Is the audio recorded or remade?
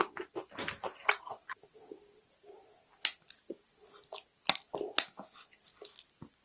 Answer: recorded